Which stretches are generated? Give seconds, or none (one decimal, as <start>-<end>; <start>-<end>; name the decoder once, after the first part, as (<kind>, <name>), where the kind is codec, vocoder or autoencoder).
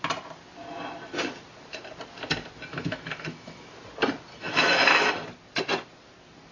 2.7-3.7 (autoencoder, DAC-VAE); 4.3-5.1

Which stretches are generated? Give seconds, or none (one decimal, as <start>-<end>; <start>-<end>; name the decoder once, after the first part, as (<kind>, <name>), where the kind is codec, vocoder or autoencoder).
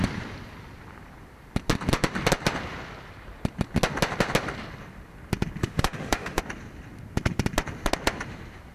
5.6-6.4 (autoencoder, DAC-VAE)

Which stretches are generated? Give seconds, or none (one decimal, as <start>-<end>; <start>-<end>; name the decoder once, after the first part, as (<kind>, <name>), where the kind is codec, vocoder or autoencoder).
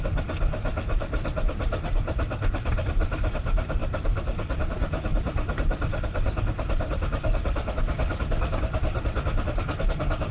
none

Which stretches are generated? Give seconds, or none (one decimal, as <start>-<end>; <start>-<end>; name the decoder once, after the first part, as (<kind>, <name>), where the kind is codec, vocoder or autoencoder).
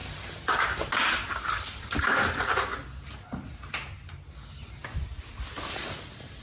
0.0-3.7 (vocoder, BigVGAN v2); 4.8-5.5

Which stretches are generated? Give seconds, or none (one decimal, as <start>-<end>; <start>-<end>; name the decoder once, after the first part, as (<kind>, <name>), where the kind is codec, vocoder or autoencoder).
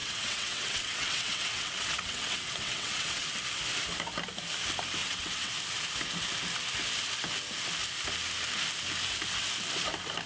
0.0-3.3 (vocoder, WaveNeXt); 5.0-5.5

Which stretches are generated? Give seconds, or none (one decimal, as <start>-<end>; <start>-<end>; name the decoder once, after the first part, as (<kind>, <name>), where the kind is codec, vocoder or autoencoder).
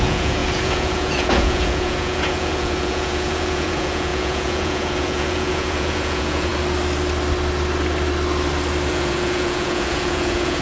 0.0-6.5 (vocoder, Vocos); 8.9-10.6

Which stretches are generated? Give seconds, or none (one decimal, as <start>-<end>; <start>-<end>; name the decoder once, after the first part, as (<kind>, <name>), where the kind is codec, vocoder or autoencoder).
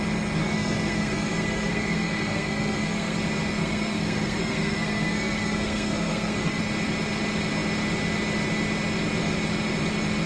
0.4-3.2 (codec, SNAC); 3.6-6.6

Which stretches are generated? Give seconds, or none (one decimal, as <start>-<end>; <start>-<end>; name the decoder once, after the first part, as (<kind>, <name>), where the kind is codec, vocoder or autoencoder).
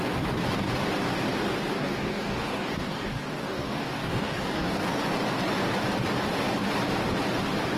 1.7-5.0 (codec, DAC)